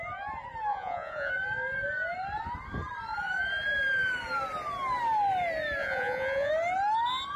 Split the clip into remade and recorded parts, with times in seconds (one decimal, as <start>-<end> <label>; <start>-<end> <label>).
0.0-0.7 recorded; 0.7-1.3 remade; 1.3-5.8 recorded; 5.8-6.5 remade; 6.5-7.4 recorded